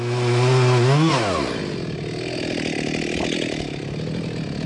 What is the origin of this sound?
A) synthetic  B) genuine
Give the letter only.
B